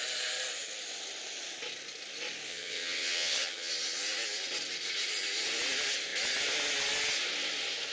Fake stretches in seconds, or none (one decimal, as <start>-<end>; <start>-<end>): 2.5-3.7